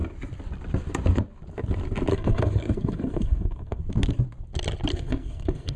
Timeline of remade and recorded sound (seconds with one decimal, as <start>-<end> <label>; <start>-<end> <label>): 0.0-2.1 recorded; 2.1-3.8 remade; 3.8-4.9 recorded; 4.9-5.8 remade